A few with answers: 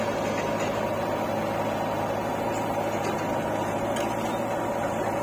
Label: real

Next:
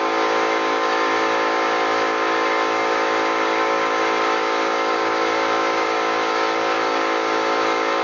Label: fake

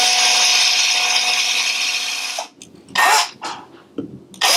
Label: real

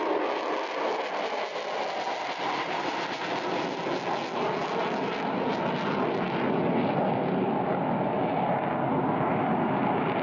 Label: real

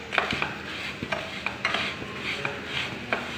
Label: real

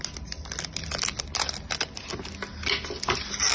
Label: real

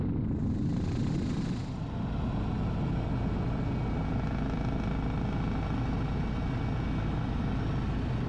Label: real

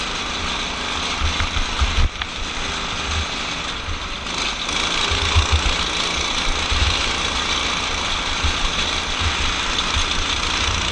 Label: real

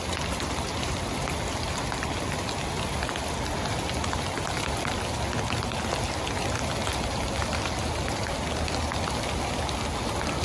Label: real